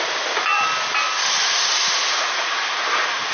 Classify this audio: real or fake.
real